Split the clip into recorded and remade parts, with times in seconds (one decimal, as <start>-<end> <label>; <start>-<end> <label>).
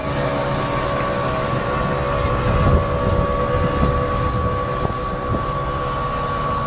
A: 0.0-6.7 recorded